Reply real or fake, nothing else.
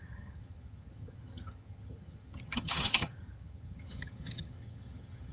fake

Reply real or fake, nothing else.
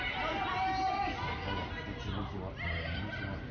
real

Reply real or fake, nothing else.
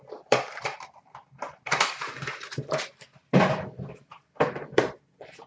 fake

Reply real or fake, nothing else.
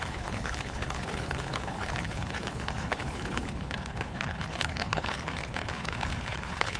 fake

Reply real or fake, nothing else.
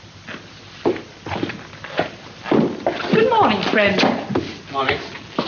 real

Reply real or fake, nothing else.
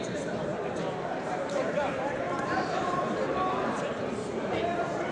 fake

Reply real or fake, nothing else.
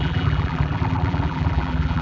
fake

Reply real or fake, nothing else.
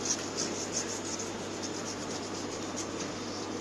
real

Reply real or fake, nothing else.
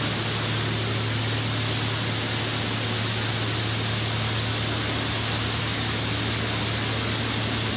real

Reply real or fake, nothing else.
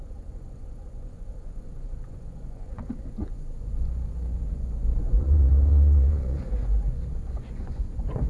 fake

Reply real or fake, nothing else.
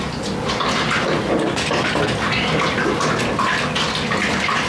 real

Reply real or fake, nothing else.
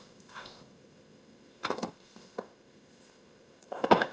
fake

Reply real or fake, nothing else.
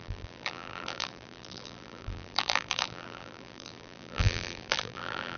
fake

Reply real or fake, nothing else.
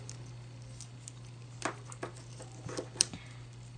real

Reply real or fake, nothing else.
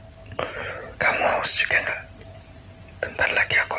real